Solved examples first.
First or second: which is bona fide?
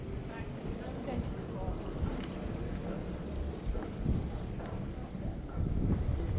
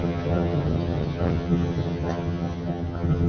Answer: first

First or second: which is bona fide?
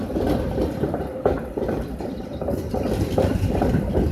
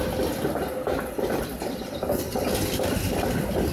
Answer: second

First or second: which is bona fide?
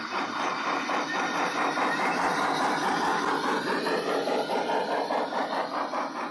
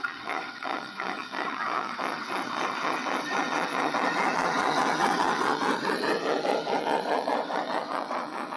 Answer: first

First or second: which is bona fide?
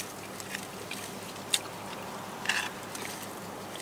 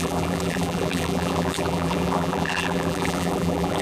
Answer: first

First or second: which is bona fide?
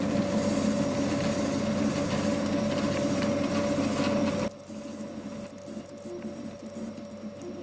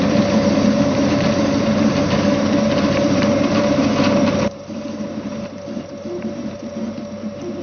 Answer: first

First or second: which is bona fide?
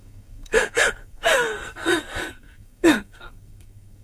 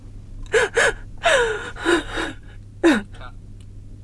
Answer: second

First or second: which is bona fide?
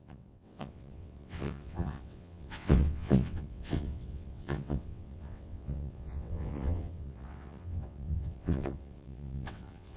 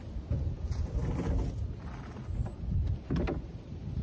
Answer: second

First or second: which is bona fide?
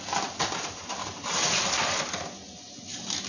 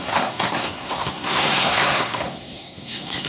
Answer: first